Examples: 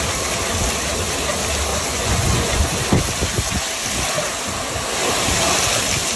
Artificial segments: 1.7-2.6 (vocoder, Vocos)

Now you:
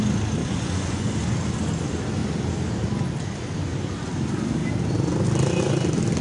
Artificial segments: 0.4-1.1 (vocoder, Vocos)

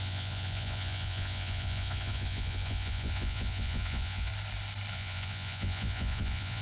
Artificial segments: 0.0-4.3 (vocoder, Vocos); 4.9-6.6

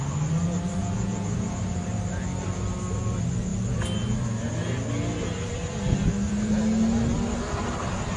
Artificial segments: 0.8-1.6 (vocoder, Vocos)

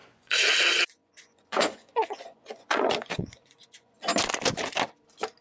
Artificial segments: 0.0-0.5 (vocoder, Vocos); 1.0-4.0